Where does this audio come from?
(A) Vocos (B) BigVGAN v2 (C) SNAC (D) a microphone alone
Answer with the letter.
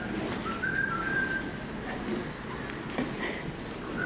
B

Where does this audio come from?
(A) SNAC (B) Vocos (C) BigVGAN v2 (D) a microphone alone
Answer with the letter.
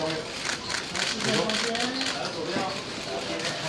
D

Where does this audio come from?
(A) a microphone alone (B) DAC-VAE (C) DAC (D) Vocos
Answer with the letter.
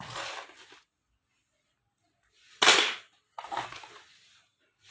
A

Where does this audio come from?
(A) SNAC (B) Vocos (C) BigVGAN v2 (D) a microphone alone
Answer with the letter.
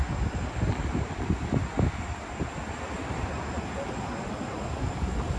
D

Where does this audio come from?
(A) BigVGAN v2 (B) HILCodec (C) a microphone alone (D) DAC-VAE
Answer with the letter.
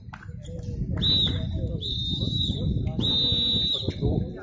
C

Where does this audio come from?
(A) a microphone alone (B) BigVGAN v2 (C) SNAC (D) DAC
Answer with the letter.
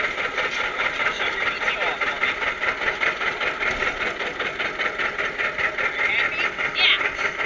A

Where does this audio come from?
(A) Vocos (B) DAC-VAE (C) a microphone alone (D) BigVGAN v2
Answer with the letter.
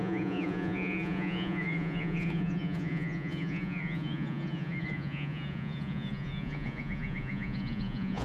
A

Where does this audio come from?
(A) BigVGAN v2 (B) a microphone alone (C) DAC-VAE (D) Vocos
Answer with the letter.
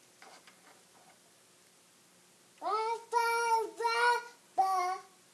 B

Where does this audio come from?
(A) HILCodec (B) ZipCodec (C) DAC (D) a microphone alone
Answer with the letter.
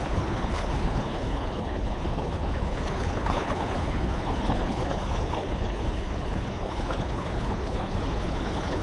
A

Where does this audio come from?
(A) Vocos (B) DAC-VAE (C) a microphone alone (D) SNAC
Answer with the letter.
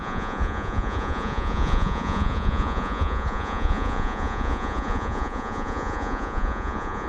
A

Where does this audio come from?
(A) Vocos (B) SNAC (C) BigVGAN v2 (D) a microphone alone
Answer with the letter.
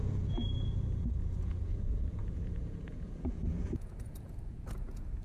A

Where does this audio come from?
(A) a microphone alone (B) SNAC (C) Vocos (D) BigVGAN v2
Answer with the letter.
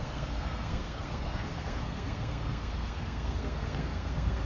B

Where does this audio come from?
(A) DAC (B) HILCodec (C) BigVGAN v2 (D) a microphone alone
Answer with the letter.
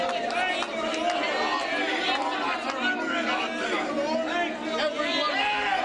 D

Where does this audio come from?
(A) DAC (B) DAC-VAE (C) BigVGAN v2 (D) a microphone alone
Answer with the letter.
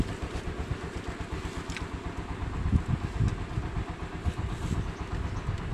D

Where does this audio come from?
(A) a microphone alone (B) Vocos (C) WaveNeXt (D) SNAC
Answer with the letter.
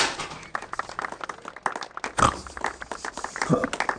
A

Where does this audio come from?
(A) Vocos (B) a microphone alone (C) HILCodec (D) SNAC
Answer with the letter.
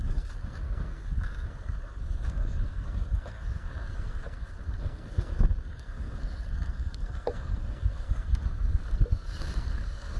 D